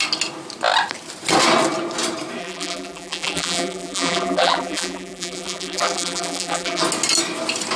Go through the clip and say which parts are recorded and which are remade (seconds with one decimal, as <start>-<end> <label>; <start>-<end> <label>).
0.0-2.4 recorded; 2.4-6.8 remade; 6.8-7.8 recorded

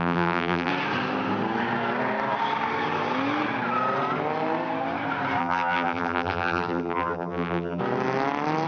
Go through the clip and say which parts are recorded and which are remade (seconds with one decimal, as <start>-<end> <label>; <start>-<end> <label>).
0.0-0.7 remade; 0.7-5.4 recorded; 5.4-7.8 remade; 7.8-8.7 recorded

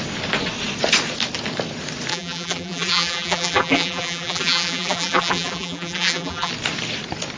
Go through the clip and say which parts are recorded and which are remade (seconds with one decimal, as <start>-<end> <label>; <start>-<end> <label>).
0.0-2.1 recorded; 2.1-6.5 remade; 6.5-7.4 recorded